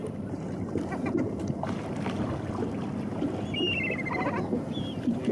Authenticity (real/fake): real